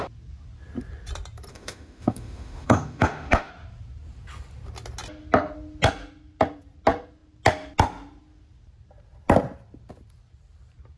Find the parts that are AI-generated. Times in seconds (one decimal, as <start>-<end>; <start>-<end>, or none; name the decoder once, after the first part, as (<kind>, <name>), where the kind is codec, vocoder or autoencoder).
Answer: 1.5-3.5 (autoencoder, DAC-VAE)